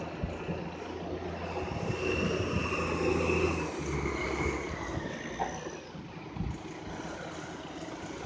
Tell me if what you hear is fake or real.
real